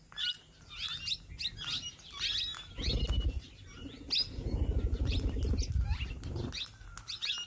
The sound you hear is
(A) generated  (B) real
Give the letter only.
B